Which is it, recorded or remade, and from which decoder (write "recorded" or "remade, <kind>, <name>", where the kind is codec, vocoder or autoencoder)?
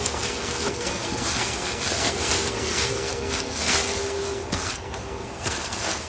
remade, codec, SNAC